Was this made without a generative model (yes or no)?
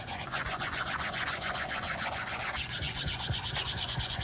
no